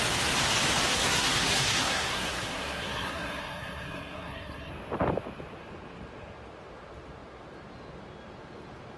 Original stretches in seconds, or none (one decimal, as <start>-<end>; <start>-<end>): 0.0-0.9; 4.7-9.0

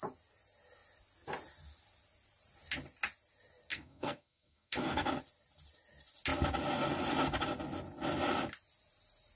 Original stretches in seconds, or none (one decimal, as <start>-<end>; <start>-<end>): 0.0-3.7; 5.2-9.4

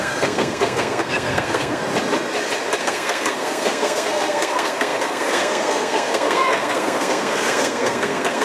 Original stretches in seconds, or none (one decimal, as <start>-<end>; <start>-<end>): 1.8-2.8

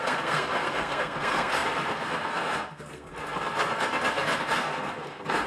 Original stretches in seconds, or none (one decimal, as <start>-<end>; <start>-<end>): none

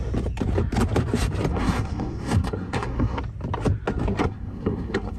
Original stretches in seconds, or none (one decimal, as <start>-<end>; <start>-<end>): 0.0-1.5; 3.2-4.2

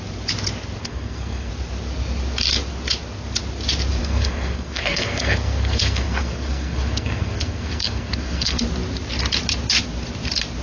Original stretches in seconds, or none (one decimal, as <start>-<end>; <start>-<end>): 0.0-0.8; 1.5-4.0; 8.6-10.6

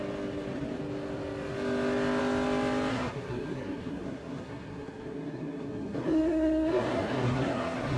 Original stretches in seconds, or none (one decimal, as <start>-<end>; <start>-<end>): 0.0-2.9

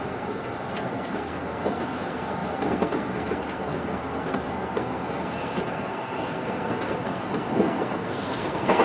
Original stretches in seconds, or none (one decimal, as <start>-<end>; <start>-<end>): none